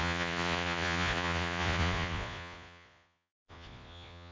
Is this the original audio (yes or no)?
no